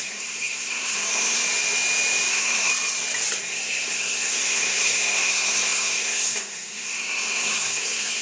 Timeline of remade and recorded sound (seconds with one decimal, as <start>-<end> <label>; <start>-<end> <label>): 0.0-1.4 remade; 1.4-2.3 recorded; 2.3-2.7 remade; 2.7-3.4 recorded; 3.4-8.2 remade